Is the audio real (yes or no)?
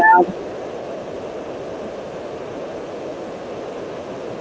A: yes